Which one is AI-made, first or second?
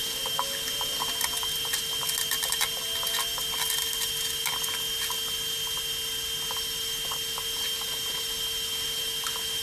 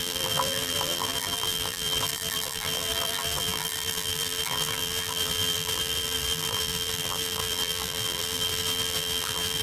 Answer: second